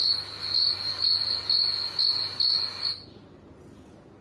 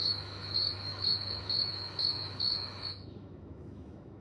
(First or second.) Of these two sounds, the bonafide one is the first